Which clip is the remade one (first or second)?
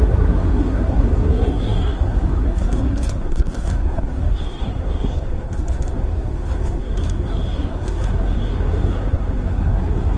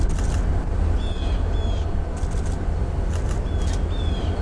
first